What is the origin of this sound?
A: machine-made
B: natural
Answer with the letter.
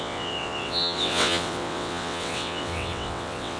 A